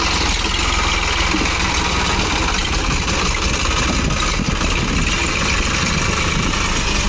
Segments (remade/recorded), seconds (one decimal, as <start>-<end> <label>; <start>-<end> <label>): 0.0-2.6 recorded; 2.6-3.9 remade; 3.9-7.1 recorded